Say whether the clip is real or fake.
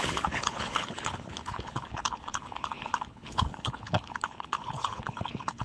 fake